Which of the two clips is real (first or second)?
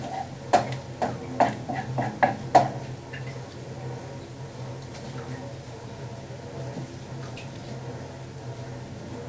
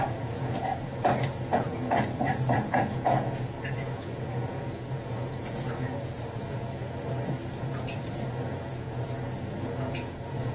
first